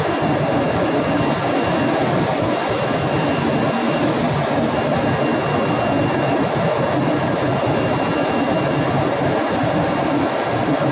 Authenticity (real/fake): fake